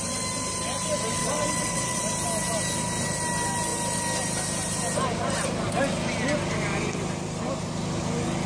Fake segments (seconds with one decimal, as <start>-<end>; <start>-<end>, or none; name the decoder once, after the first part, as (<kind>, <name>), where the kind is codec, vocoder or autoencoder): 1.2-2.0 (vocoder, WaveNeXt)